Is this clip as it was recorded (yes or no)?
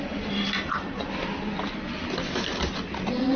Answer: yes